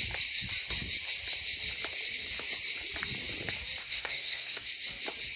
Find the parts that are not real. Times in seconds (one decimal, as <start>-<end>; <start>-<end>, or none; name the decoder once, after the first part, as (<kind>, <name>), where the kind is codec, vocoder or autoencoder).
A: 3.8-4.7 (codec, SNAC)